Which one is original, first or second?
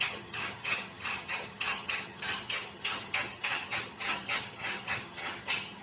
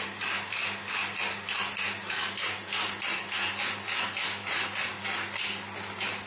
second